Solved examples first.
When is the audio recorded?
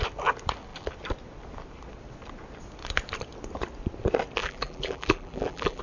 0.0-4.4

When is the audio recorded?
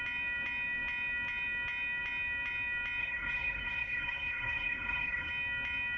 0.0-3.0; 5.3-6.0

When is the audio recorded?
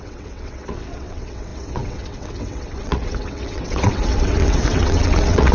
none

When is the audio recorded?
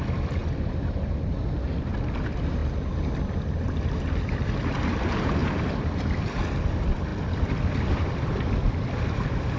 0.0-0.4; 1.1-5.4; 6.4-7.1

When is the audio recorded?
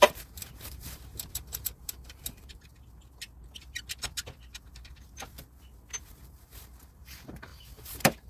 2.7-6.0